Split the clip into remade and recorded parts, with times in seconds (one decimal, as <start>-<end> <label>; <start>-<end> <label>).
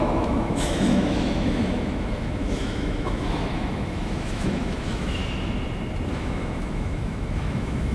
0.0-5.2 remade; 5.2-6.1 recorded; 6.1-7.9 remade